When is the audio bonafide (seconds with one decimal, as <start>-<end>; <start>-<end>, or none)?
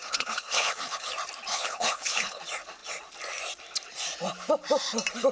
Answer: 1.1-1.5; 2.4-5.3